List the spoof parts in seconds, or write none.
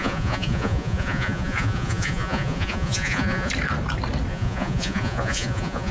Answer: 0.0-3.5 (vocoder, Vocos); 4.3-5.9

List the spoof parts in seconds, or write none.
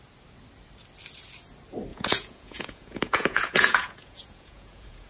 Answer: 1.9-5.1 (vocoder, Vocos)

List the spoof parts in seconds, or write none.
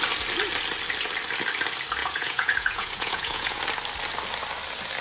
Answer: 2.0-3.6 (vocoder, Vocos)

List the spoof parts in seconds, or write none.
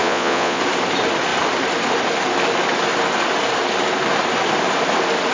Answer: 0.0-0.6 (vocoder, Vocos)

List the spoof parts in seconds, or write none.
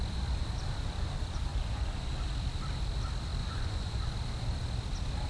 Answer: 1.5-2.1 (vocoder, Vocos); 3.4-4.0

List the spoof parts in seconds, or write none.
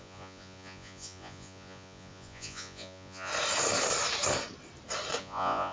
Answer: 0.0-3.3 (vocoder, Vocos); 5.2-5.7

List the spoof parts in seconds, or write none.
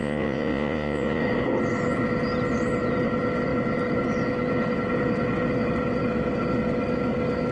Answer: 0.0-1.2 (vocoder, Vocos)